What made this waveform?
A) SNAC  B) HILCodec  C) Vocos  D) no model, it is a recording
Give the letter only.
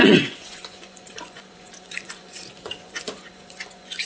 C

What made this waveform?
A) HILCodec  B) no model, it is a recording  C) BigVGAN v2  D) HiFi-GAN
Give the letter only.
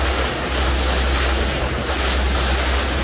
B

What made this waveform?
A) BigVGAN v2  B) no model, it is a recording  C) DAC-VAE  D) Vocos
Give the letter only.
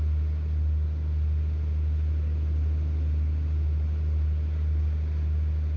B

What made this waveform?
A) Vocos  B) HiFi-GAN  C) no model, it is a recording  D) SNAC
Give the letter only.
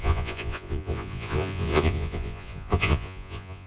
A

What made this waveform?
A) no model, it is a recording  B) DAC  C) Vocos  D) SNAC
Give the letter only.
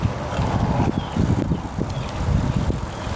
A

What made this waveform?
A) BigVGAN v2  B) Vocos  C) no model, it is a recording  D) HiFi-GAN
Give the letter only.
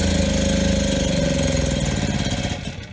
C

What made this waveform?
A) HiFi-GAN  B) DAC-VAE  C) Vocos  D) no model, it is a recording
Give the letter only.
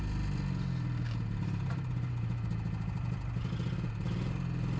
D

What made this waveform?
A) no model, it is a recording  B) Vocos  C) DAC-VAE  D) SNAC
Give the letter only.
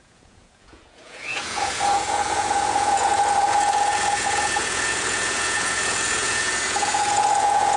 B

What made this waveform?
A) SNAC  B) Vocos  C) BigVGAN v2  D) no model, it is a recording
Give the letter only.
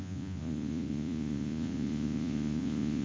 B